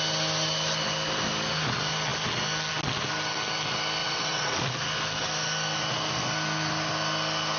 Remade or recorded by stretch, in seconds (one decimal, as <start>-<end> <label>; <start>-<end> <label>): 0.0-4.0 recorded; 4.0-4.6 remade; 4.6-7.6 recorded